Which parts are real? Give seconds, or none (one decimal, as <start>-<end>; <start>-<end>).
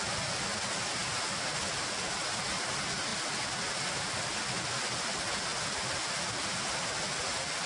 0.0-7.7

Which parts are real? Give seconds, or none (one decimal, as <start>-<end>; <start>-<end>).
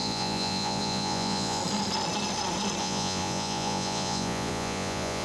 1.6-2.8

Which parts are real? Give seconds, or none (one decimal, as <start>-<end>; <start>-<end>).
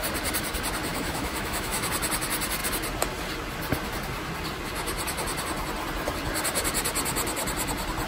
0.0-0.9; 1.9-8.1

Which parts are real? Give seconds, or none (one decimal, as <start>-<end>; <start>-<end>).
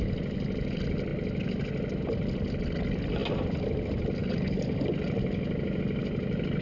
0.0-6.6